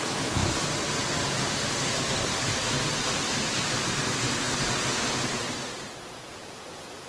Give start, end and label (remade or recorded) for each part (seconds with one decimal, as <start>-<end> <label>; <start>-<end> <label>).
0.0-0.4 remade; 0.4-4.7 recorded; 4.7-5.3 remade; 5.3-5.8 recorded; 5.8-7.1 remade